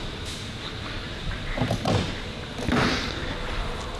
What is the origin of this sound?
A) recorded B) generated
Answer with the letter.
A